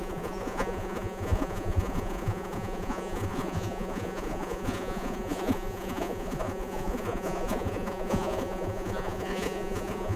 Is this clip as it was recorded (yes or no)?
no